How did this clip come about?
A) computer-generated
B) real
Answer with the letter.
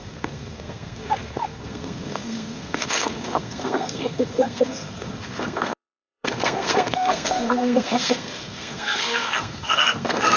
A